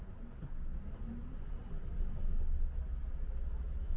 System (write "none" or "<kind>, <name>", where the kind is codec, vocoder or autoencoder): none